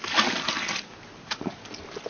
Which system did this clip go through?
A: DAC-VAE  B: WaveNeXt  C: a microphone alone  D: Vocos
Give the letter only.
C